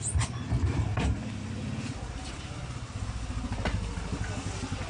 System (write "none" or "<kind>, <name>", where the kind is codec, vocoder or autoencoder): none